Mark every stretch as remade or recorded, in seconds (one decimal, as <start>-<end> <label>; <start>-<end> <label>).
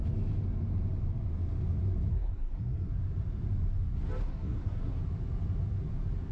0.0-2.1 recorded; 2.1-2.9 remade; 2.9-4.2 recorded; 4.2-5.0 remade; 5.0-6.3 recorded